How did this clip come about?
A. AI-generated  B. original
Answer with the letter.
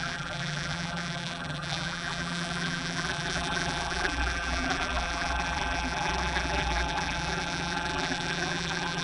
A